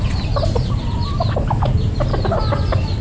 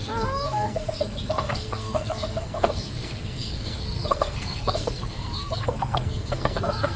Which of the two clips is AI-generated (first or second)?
second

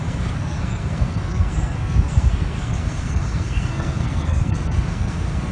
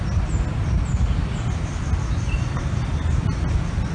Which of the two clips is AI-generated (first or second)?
first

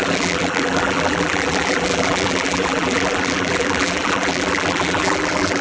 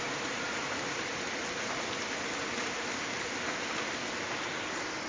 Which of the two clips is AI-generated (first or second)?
first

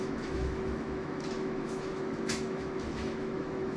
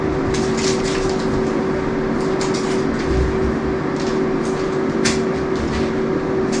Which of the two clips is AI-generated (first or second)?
first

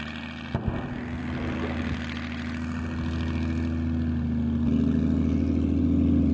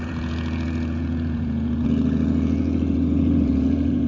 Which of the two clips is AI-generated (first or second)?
second